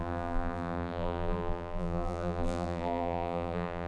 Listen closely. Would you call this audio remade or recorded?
remade